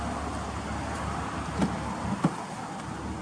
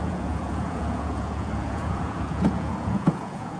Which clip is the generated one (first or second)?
second